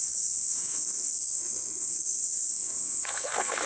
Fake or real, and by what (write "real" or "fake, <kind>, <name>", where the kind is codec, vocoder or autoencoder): fake, codec, SNAC